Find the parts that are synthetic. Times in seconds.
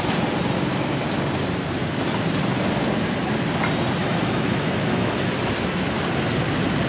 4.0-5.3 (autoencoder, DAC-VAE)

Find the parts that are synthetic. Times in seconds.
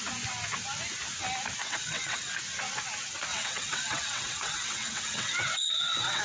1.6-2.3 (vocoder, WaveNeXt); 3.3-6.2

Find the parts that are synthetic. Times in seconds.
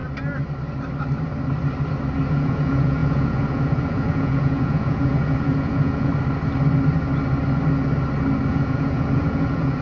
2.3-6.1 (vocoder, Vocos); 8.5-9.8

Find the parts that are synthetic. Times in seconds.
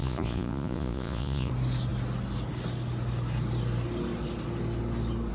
0.0-1.5 (vocoder, Vocos)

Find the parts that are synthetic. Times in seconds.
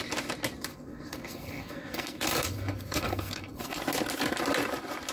0.7-3.8 (codec, SNAC)